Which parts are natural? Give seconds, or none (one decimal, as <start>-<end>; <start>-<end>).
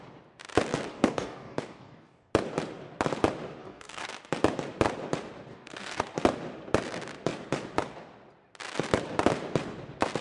0.0-0.9; 2.3-3.6; 4.1-5.5; 6.0-10.2